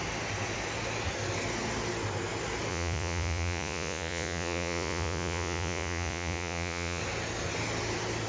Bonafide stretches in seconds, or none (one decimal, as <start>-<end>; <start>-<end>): 0.0-2.7; 7.0-8.3